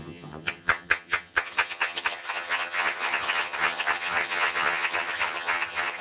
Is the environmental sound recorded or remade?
remade